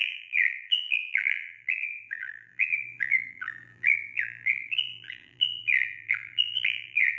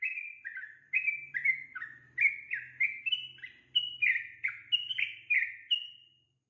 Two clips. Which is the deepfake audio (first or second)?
first